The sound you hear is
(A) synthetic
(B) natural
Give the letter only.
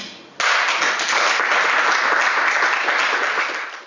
B